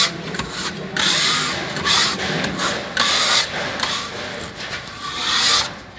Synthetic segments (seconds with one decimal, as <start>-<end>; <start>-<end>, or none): none